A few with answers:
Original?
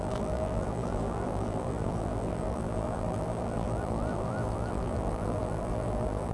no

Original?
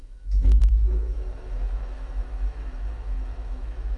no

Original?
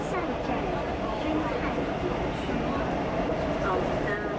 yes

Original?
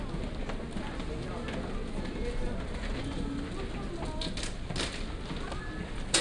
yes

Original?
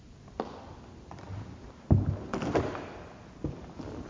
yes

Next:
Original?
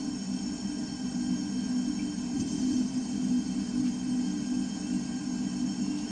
yes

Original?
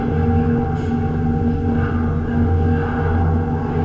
yes